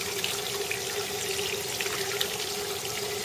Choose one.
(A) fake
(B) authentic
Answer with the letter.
B